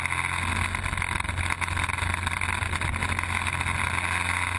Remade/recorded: recorded